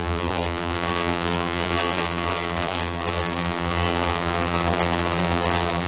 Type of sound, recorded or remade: remade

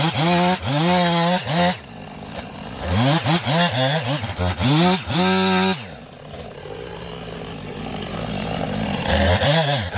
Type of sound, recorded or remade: recorded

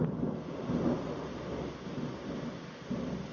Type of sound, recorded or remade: recorded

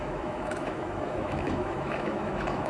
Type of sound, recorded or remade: remade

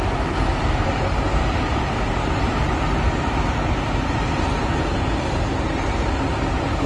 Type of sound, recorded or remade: remade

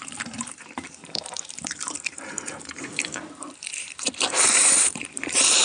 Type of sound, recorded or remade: remade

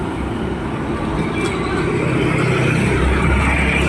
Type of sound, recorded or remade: recorded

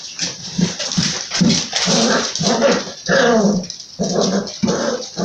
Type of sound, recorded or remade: remade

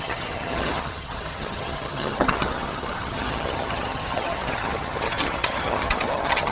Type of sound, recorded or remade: remade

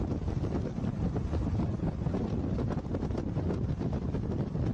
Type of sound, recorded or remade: recorded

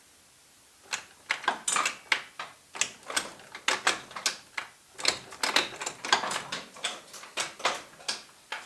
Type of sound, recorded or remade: recorded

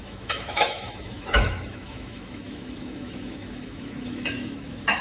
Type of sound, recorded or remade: remade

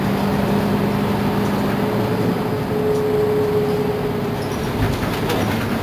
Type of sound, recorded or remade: recorded